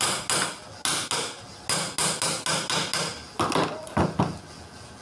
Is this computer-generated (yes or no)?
no